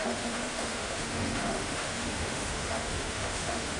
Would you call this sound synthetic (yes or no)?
yes